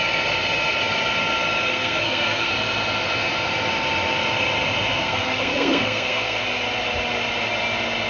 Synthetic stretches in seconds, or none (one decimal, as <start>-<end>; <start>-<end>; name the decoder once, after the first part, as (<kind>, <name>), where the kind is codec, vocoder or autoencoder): 1.7-2.5 (codec, SNAC); 4.9-6.4